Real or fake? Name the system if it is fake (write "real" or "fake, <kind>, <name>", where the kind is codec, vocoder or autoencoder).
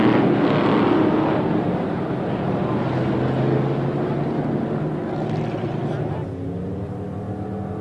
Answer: real